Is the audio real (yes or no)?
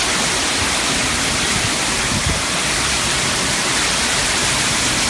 yes